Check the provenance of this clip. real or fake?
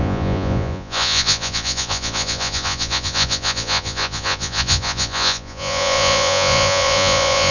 fake